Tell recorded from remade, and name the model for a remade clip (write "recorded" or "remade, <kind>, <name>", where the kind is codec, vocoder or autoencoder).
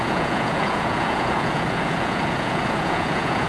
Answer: remade, vocoder, Vocos